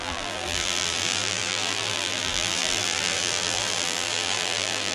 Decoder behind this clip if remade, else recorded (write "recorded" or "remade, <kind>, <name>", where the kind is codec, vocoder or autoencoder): remade, vocoder, BigVGAN v2